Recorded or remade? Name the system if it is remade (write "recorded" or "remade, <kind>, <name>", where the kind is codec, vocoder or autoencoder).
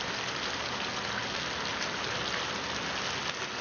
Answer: recorded